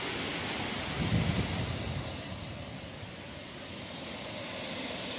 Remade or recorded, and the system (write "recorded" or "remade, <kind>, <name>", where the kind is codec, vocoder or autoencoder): recorded